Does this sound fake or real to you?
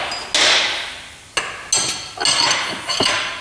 real